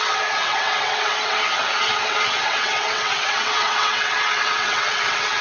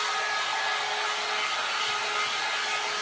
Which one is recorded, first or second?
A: second